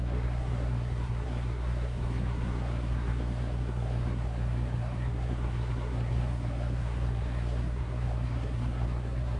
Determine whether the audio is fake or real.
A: fake